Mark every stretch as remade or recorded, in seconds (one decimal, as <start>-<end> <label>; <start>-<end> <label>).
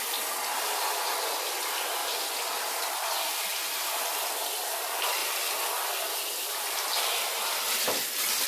0.0-8.5 recorded